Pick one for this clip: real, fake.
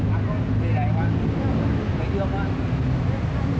real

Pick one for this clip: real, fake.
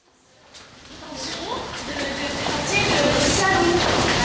fake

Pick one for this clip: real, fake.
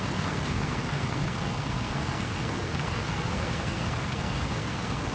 fake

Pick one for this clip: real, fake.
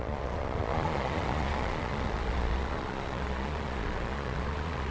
fake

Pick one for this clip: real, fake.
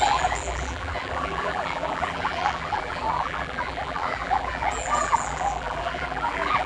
fake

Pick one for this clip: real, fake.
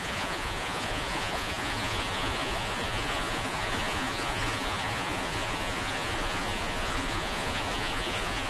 fake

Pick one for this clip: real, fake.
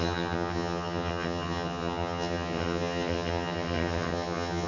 fake